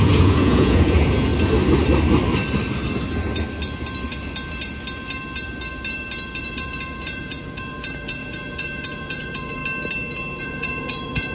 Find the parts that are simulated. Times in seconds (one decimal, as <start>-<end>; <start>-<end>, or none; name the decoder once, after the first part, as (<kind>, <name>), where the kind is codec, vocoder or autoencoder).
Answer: 0.0-1.3 (vocoder, Vocos); 6.4-9.6; 10.4-11.3

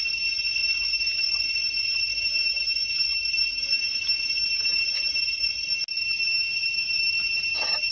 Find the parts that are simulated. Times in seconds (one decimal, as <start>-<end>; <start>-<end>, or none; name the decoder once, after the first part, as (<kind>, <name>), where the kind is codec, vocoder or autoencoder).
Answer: none